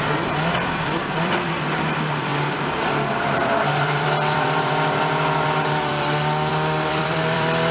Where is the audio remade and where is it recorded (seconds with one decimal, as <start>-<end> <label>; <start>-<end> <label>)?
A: 0.0-2.3 remade; 2.3-3.1 recorded; 3.1-5.9 remade; 5.9-6.5 recorded; 6.5-7.7 remade